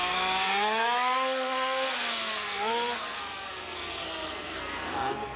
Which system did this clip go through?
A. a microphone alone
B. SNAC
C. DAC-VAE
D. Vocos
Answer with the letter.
B